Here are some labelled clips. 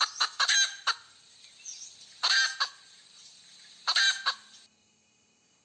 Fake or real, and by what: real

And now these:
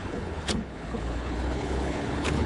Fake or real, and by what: fake, codec, HILCodec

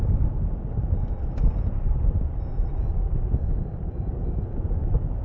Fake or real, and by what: real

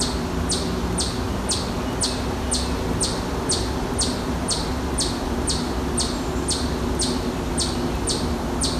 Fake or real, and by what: real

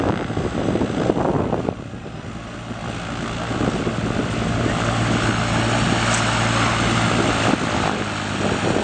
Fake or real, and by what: real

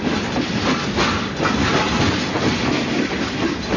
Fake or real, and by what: real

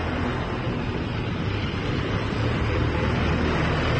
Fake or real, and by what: real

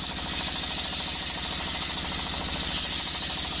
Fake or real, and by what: real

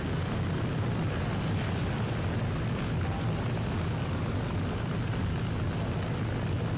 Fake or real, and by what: real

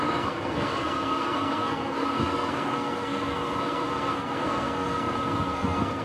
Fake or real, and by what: fake, codec, SNAC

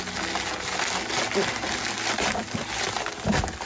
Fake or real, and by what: real